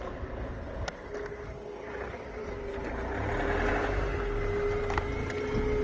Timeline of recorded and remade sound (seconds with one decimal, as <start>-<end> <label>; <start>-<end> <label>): 0.0-5.8 recorded